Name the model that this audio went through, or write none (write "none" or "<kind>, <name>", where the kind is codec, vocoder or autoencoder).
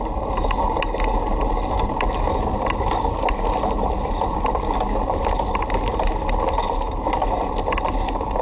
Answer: none